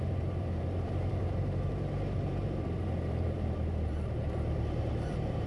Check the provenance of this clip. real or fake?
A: fake